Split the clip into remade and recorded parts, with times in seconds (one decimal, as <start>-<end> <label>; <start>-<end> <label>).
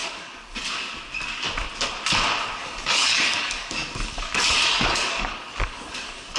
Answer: 0.0-0.6 remade; 0.6-2.6 recorded; 2.6-6.4 remade